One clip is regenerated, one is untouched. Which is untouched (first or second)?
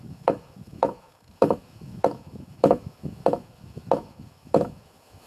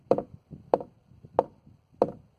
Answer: second